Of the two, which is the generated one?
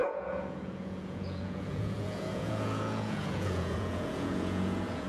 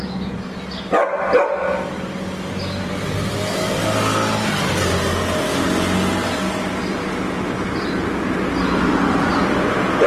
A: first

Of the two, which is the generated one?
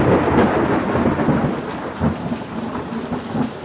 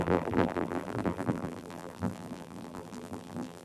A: second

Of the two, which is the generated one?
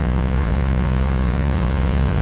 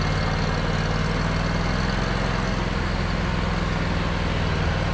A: first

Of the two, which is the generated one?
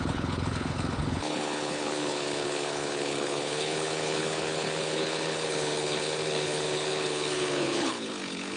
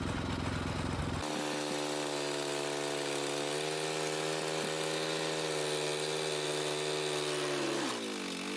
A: first